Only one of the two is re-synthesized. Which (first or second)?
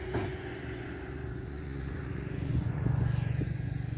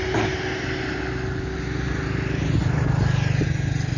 first